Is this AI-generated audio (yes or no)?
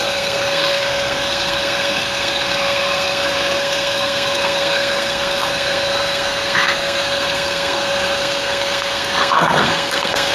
yes